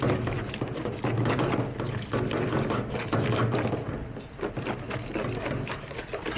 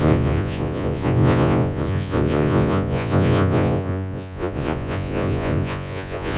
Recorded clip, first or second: first